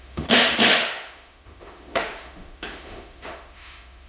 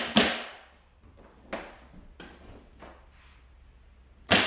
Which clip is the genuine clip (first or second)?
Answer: second